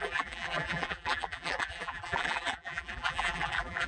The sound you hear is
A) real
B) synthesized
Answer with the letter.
B